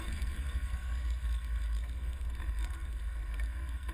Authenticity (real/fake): fake